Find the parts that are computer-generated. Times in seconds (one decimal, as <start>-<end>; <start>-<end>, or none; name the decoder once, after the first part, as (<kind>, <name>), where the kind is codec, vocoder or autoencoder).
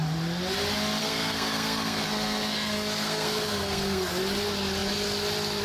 1.0-4.1 (codec, SNAC)